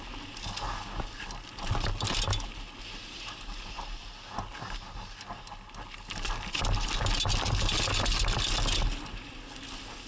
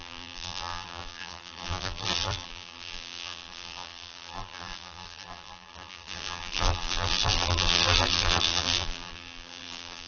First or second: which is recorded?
first